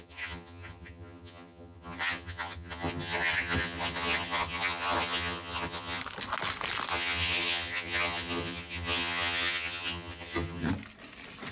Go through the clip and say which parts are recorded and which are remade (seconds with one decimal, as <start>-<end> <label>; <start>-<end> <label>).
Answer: 0.0-6.0 remade; 6.0-6.9 recorded; 6.9-10.7 remade; 10.7-11.5 recorded